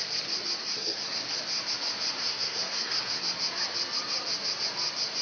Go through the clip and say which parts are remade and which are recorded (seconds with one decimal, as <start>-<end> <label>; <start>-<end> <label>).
0.0-0.6 recorded; 0.6-1.2 remade; 1.2-2.2 recorded; 2.2-3.2 remade; 3.2-5.2 recorded